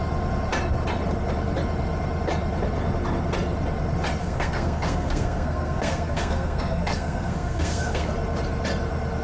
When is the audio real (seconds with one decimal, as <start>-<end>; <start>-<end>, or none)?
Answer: 0.0-4.2; 8.1-9.2